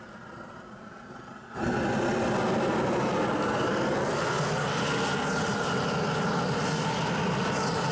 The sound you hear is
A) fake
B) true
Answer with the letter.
B